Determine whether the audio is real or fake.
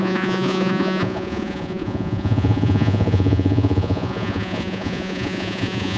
fake